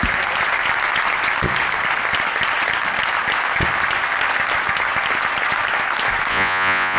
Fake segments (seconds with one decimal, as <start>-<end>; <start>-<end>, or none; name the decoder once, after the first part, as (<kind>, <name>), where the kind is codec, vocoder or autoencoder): 6.3-7.0 (vocoder, Vocos)